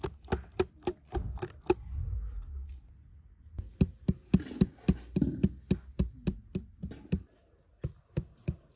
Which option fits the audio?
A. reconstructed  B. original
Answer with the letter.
B